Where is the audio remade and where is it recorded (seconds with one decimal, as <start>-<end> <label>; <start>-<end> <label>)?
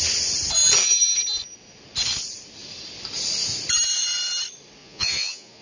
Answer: 0.0-4.8 recorded; 4.8-5.6 remade